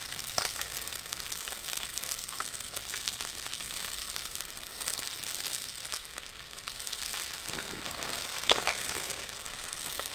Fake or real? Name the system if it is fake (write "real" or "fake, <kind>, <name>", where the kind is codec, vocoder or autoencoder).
fake, codec, SNAC